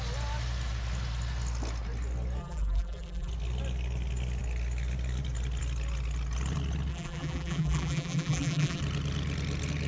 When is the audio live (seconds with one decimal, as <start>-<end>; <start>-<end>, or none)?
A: 0.0-2.4; 3.3-6.9; 8.8-9.9